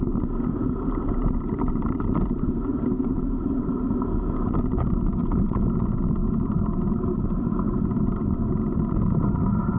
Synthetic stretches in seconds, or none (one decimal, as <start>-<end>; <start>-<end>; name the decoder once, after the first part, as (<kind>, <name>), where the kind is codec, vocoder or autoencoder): 0.5-4.3 (vocoder, BigVGAN v2); 6.2-8.0